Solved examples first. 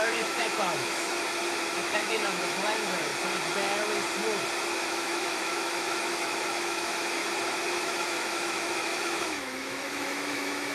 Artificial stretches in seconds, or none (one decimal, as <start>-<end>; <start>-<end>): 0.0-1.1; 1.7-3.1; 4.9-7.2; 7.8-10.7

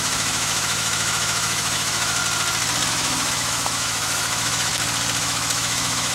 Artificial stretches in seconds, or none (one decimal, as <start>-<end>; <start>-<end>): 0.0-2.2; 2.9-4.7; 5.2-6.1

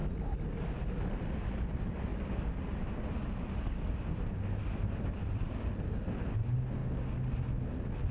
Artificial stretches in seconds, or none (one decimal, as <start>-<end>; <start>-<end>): none